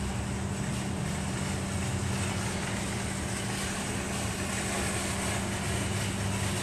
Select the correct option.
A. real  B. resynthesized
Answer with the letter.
A